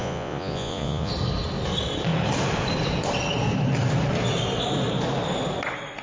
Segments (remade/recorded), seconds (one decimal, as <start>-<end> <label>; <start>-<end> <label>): 0.0-1.1 remade; 1.1-6.0 recorded